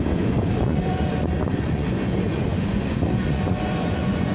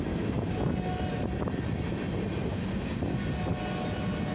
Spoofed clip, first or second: first